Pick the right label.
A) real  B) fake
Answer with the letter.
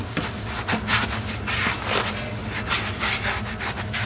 A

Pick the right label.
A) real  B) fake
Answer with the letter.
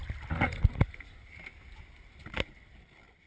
A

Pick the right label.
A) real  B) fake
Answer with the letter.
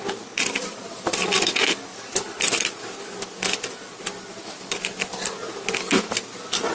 A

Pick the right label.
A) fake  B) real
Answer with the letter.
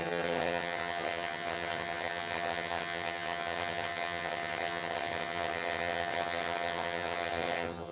A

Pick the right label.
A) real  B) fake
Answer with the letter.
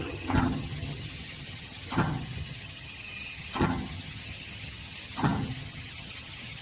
B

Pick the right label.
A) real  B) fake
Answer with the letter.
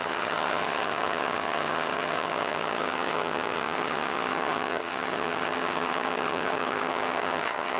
B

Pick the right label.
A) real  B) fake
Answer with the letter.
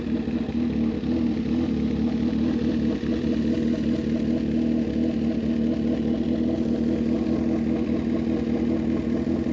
A